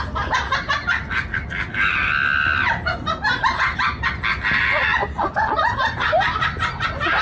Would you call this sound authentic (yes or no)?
yes